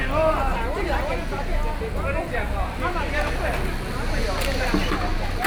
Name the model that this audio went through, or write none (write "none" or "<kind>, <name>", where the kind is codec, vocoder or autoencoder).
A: none